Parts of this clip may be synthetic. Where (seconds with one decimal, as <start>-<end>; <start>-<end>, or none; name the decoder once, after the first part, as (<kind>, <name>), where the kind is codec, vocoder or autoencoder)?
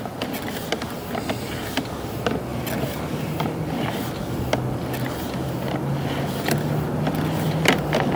none